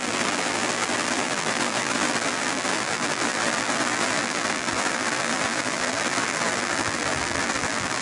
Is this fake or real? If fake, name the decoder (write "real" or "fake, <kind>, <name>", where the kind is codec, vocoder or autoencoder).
fake, vocoder, BigVGAN v2